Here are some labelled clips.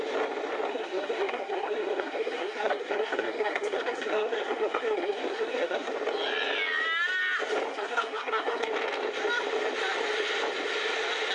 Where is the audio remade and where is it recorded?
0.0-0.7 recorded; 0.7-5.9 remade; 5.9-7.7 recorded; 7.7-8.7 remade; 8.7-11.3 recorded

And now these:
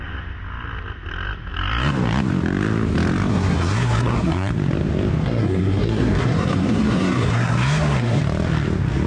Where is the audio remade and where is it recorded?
0.0-3.3 recorded; 3.3-4.5 remade; 4.5-5.2 recorded; 5.2-8.2 remade; 8.2-9.1 recorded

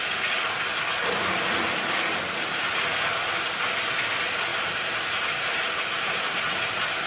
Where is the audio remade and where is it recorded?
0.0-1.0 recorded; 1.0-2.7 remade; 2.7-4.5 recorded; 4.5-6.4 remade; 6.4-7.1 recorded

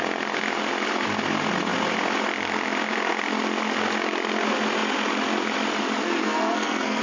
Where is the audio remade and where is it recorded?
0.0-6.2 recorded; 6.2-7.0 remade